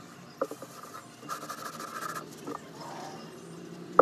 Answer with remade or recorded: recorded